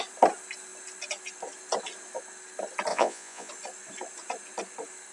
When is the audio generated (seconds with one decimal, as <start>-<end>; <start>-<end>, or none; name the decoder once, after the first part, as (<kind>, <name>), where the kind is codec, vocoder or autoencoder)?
2.9-3.5 (vocoder, Vocos)